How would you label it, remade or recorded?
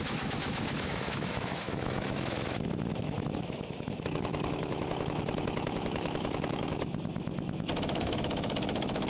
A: remade